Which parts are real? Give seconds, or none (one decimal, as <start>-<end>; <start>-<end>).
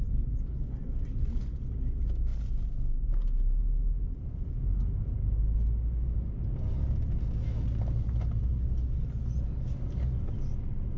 0.0-11.0